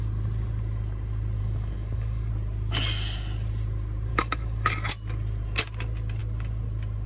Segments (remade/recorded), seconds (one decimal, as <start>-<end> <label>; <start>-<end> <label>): 0.0-1.4 recorded; 1.4-2.3 remade; 2.3-4.1 recorded; 4.1-4.9 remade; 4.9-7.1 recorded